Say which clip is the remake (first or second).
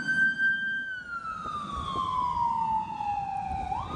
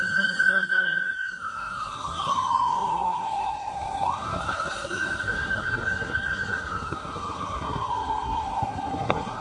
second